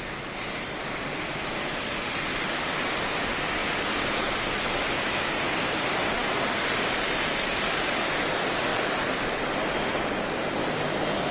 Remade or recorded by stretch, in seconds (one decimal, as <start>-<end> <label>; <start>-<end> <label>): 0.0-3.6 recorded; 3.6-4.6 remade; 4.6-8.7 recorded; 8.7-9.4 remade; 9.4-11.3 recorded